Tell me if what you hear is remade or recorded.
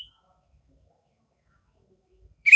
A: remade